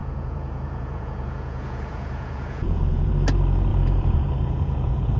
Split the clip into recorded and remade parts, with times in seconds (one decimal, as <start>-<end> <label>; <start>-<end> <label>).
0.0-3.1 remade; 3.1-3.7 recorded; 3.7-5.2 remade